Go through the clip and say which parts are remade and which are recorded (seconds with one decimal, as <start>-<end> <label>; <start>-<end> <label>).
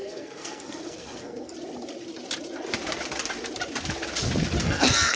0.0-1.5 remade; 1.5-4.6 recorded; 4.6-5.2 remade